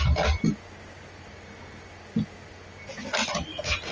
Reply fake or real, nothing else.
real